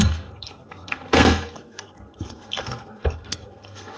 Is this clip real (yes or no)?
no